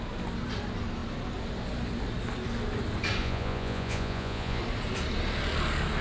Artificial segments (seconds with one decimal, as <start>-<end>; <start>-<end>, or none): 3.2-4.6